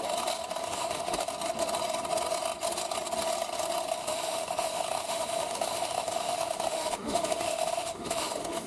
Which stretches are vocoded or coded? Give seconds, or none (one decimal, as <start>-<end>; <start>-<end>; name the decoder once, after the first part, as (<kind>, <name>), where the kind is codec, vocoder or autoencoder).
0.6-1.3 (autoencoder, DAC-VAE); 4.0-8.7